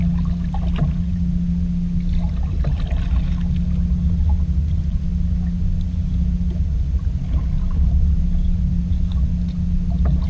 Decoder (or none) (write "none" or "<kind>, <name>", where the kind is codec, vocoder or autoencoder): none